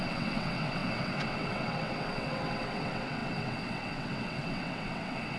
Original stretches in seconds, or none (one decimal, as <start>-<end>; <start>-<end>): none